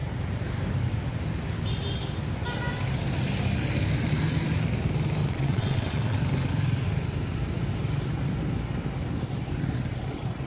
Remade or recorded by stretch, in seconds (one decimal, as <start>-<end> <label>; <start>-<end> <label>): 0.0-5.2 recorded; 5.2-6.2 remade; 6.2-10.5 recorded